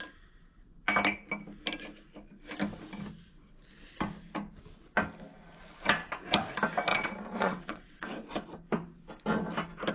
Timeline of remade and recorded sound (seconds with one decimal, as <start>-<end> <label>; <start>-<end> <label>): 0.0-6.9 recorded; 6.9-8.3 remade; 8.3-9.9 recorded